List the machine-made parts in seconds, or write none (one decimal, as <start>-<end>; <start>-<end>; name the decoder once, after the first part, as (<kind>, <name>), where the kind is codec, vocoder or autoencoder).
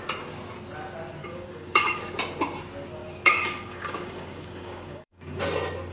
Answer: 1.2-2.0 (codec, DAC); 3.0-5.4